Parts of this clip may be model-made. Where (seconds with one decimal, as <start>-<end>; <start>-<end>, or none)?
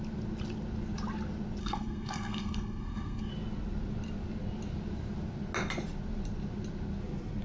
1.6-3.3